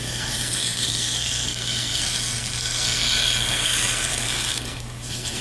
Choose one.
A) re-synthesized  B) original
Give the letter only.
A